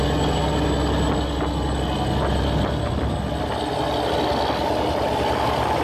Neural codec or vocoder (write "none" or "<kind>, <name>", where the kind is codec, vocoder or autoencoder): none